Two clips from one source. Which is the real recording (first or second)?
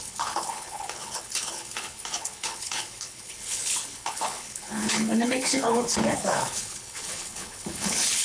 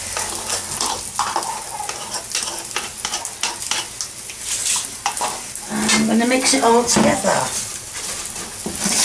second